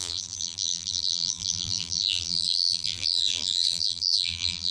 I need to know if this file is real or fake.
fake